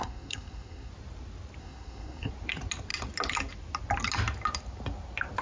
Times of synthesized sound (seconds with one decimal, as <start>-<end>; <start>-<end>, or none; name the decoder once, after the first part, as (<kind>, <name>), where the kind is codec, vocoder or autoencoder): 0.0-0.9 (codec, SNAC); 1.6-2.3